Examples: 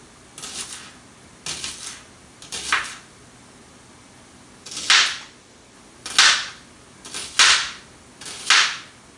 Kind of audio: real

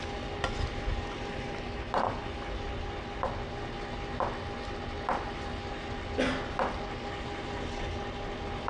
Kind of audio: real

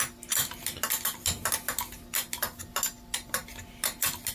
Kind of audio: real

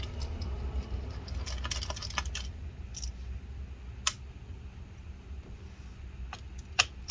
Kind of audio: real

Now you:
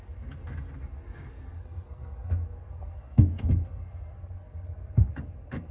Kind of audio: fake